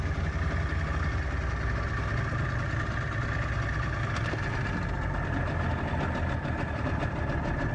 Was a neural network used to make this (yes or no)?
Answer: no